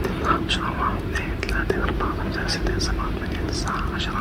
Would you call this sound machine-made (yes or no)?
yes